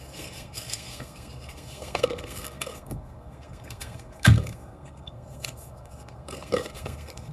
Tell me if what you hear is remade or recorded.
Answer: remade